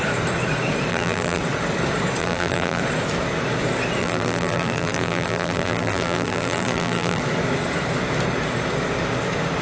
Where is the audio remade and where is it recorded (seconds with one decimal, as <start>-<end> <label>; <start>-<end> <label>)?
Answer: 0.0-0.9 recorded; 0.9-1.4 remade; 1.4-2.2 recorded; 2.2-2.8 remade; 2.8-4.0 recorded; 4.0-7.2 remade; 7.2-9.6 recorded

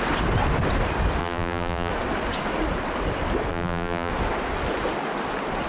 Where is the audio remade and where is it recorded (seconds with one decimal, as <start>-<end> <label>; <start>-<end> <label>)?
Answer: 0.0-1.2 recorded; 1.2-1.9 remade; 1.9-3.5 recorded; 3.5-4.1 remade; 4.1-5.7 recorded

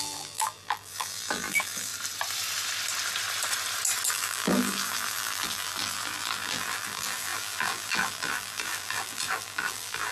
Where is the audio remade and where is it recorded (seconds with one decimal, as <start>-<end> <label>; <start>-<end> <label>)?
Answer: 0.0-1.9 remade; 1.9-4.1 recorded; 4.1-10.1 remade